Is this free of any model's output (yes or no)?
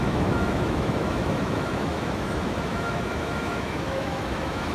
no